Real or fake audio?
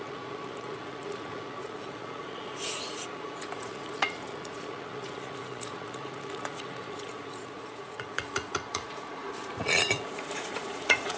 fake